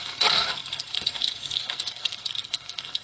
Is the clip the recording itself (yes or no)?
no